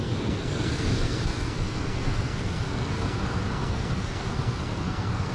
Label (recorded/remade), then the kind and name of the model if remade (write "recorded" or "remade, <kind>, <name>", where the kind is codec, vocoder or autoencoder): remade, codec, SNAC